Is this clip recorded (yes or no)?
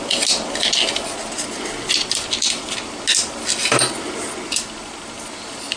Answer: yes